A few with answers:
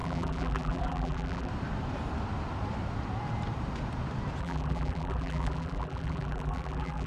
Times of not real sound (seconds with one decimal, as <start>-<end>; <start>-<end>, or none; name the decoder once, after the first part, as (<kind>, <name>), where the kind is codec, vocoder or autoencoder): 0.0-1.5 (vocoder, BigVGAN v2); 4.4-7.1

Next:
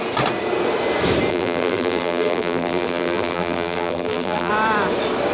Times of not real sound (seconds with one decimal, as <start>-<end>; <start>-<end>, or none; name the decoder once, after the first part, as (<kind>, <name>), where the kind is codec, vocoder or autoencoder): 1.3-4.5 (vocoder, BigVGAN v2)

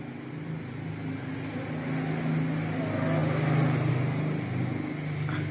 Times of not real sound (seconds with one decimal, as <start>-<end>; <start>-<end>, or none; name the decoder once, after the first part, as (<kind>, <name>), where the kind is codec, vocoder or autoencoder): none

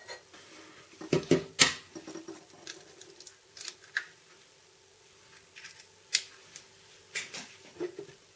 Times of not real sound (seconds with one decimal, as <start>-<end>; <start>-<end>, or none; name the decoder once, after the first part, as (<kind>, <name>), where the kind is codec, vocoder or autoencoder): none